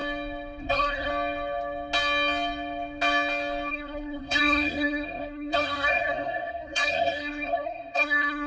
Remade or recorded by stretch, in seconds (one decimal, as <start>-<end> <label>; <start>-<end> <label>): 0.0-0.6 recorded; 0.6-1.1 remade; 1.1-3.7 recorded; 3.7-8.5 remade

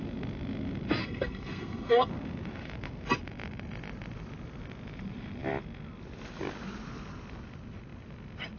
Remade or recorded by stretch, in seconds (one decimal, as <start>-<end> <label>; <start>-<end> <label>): 0.0-1.0 recorded; 1.0-2.1 remade; 2.1-8.6 recorded

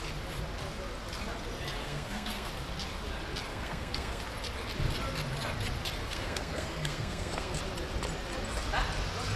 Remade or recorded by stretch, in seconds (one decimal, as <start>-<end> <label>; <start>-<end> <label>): 0.0-1.8 recorded; 1.8-2.5 remade; 2.5-3.5 recorded; 3.5-4.2 remade; 4.2-6.0 recorded; 6.0-7.6 remade; 7.6-9.4 recorded

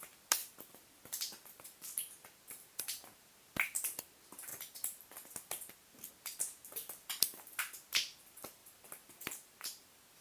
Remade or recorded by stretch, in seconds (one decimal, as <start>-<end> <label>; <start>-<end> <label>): 0.0-10.2 recorded